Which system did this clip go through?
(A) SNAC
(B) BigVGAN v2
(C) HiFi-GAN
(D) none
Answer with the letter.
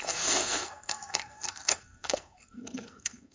A